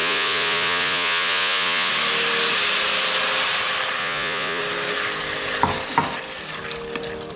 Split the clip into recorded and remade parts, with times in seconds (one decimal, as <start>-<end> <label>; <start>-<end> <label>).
0.0-1.9 remade; 1.9-4.0 recorded; 4.0-4.6 remade; 4.6-7.4 recorded